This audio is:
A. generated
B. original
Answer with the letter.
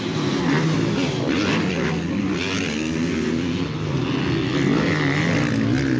B